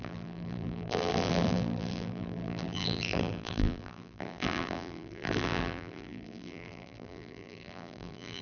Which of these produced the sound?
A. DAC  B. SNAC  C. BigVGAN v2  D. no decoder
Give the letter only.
C